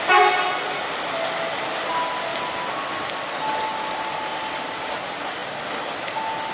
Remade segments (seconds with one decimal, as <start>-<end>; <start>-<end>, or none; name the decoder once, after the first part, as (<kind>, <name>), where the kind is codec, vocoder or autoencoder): 3.7-4.3 (vocoder, BigVGAN v2)